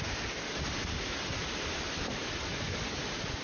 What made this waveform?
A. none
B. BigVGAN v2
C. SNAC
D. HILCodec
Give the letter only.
A